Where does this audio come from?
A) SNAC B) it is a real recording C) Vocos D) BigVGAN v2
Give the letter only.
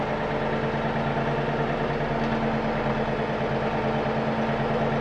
B